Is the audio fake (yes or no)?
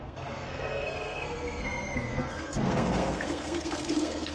yes